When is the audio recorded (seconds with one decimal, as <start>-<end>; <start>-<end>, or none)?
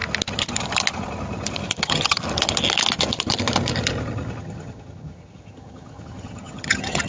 0.0-1.8; 2.2-4.4